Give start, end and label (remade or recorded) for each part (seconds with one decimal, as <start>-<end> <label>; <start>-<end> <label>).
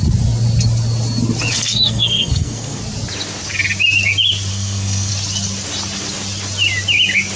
0.0-1.5 recorded; 1.5-2.8 remade; 2.8-4.5 recorded; 4.5-5.1 remade; 5.1-7.4 recorded